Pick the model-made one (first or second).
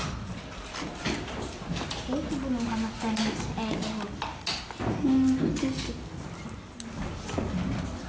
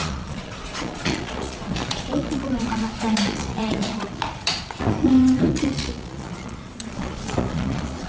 second